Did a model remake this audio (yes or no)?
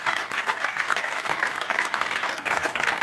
yes